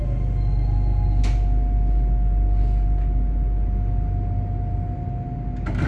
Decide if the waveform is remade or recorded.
recorded